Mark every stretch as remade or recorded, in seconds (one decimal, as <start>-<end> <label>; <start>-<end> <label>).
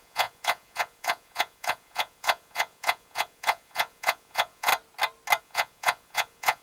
0.0-4.7 remade; 4.7-5.4 recorded; 5.4-6.6 remade